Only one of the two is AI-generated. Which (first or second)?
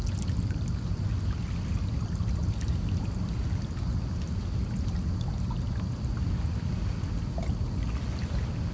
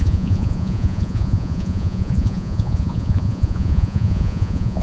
second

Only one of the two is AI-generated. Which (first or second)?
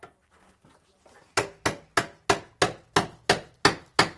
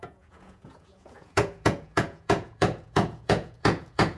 second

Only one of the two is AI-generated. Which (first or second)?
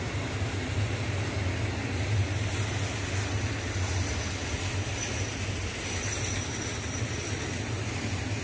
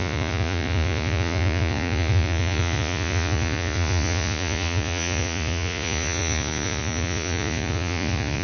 second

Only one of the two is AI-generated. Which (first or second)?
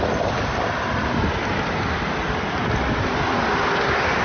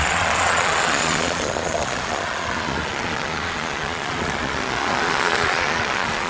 second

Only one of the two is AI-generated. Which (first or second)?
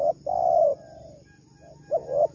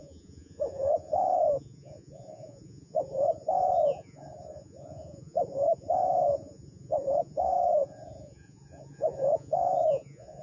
second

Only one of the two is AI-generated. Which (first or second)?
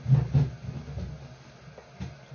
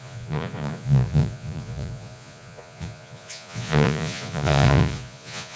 second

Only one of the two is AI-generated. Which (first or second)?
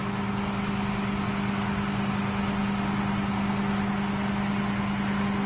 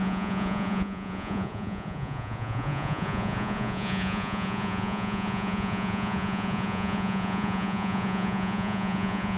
second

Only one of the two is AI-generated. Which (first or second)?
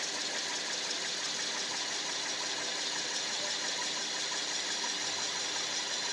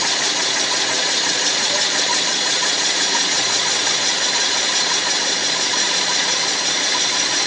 second